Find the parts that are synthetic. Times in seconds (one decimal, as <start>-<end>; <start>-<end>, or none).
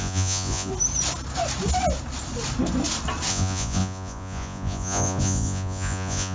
0.0-0.7; 3.3-6.3